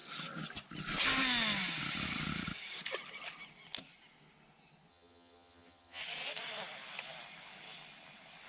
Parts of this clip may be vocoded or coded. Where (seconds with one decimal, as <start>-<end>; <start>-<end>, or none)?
4.9-6.0